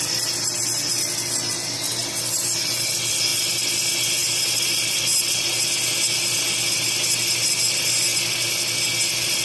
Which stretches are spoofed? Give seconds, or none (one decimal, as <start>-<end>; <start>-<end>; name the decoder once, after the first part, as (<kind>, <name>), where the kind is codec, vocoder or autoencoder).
none